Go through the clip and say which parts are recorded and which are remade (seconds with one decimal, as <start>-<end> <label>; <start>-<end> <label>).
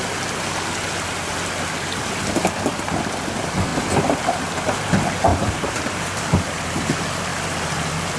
0.0-5.3 recorded; 5.3-6.4 remade; 6.4-8.2 recorded